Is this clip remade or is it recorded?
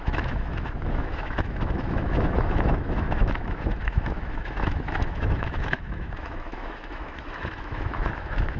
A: remade